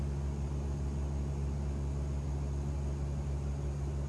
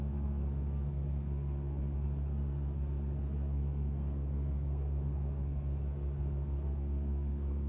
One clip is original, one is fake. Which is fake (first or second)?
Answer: second